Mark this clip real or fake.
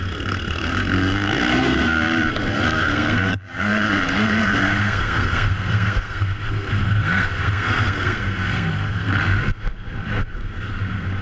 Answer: fake